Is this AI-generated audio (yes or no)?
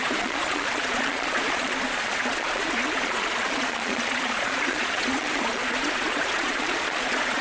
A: yes